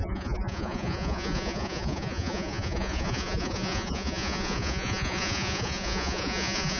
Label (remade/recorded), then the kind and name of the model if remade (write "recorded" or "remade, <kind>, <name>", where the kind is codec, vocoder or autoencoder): remade, vocoder, Vocos